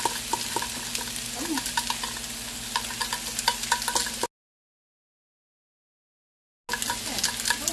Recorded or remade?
recorded